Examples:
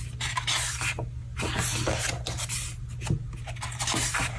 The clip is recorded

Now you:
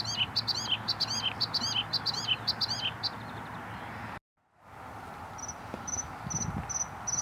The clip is recorded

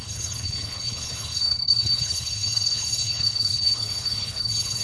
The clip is remade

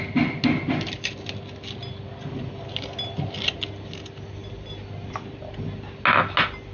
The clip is recorded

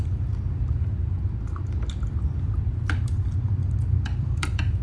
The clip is remade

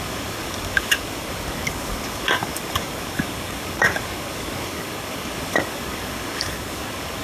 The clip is remade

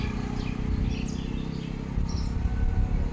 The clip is recorded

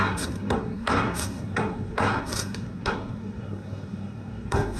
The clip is remade